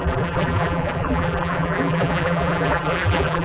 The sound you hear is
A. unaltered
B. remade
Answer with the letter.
B